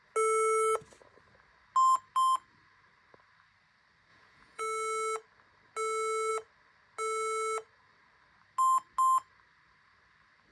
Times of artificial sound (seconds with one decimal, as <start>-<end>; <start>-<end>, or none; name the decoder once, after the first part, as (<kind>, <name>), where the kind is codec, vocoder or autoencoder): 4.1-4.6 (vocoder, Vocos)